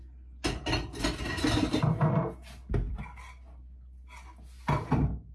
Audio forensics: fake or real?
real